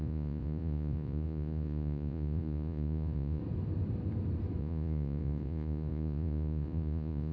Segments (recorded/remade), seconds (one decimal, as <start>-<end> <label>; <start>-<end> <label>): 0.0-3.4 remade; 3.4-4.6 recorded; 4.6-7.3 remade